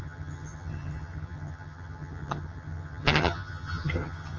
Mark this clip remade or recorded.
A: remade